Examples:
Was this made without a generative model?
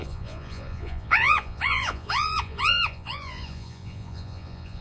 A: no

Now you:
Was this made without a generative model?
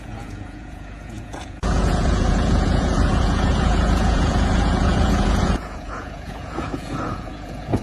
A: no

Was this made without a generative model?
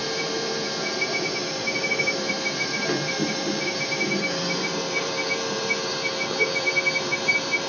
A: no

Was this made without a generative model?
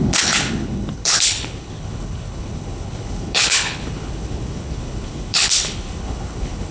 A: no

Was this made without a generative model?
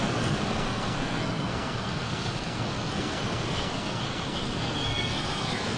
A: no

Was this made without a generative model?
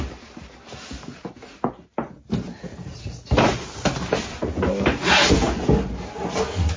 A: yes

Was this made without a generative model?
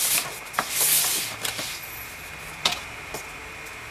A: yes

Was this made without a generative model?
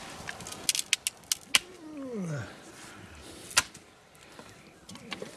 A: yes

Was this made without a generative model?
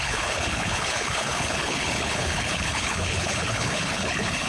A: no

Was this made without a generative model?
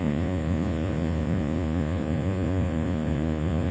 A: no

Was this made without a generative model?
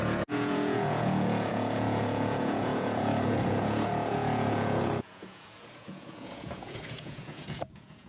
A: no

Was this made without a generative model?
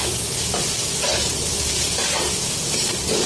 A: no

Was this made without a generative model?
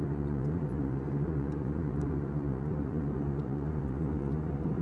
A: no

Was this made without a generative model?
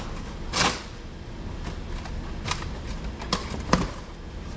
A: yes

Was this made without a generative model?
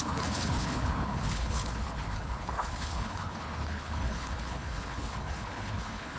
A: no